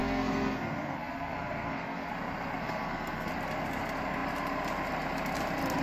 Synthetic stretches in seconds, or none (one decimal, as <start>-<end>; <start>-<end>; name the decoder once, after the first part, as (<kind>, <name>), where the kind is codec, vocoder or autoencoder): 0.0-2.1 (codec, SNAC); 2.6-3.3